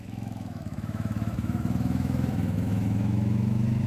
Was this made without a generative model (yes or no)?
no